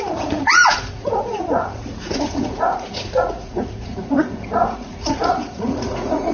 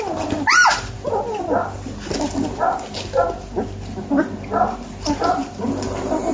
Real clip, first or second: second